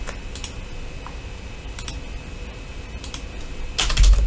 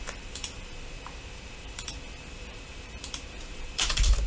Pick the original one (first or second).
first